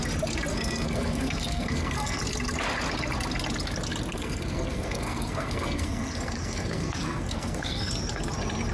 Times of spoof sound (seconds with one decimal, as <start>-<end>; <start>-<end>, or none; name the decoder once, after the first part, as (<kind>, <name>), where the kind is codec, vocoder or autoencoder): 0.5-2.2 (codec, SNAC); 4.1-7.9